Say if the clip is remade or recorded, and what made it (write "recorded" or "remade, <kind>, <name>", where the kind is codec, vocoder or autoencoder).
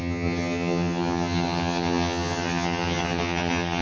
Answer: remade, vocoder, HiFi-GAN